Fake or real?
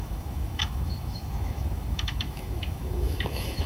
fake